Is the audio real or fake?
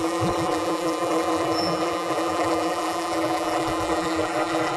fake